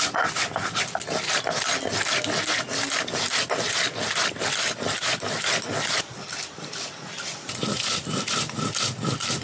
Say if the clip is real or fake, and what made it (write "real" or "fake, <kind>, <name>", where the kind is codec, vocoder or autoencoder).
real